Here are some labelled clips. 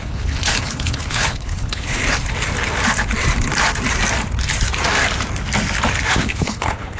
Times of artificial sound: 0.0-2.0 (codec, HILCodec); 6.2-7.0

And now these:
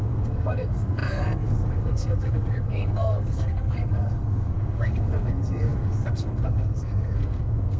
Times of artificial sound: 0.0-7.8 (codec, SNAC)

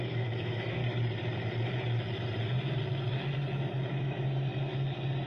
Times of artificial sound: 0.0-0.8 (autoencoder, DAC-VAE); 4.0-4.5

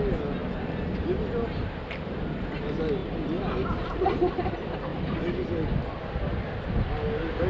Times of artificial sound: none

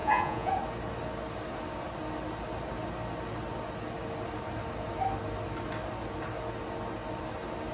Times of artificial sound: 0.0-0.5 (vocoder, Vocos)

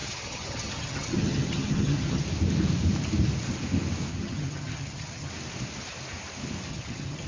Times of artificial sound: 0.0-2.2 (vocoder, HiFi-GAN); 4.1-5.3; 6.7-7.3